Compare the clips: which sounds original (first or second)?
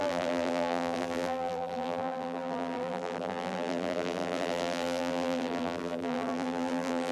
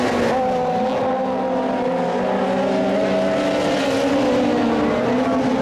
second